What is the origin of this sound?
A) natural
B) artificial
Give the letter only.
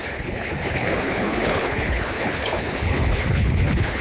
B